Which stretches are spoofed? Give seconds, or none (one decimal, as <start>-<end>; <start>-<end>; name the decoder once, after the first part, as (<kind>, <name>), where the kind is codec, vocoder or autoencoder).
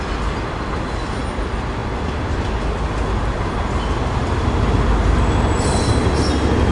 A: none